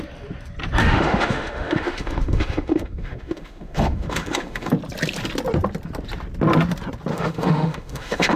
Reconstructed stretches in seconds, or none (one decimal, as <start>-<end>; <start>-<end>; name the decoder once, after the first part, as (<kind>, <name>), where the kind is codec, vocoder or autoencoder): 0.8-4.7 (autoencoder, DAC-VAE); 7.1-8.4